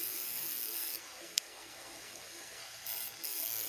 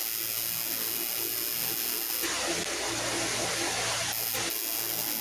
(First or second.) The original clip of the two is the second